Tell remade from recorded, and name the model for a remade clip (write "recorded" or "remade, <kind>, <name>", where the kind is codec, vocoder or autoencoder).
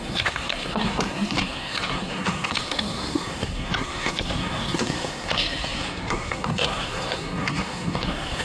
remade, codec, SNAC